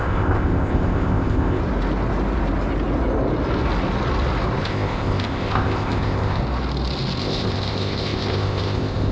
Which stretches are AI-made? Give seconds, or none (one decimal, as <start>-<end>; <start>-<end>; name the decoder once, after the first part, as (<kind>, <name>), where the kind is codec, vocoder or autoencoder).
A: 0.0-1.6 (codec, ZipCodec); 4.6-6.4; 7.2-9.1